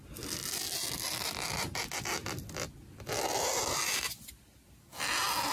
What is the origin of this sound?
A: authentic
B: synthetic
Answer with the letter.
A